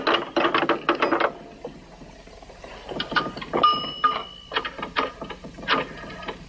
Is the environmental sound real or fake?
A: real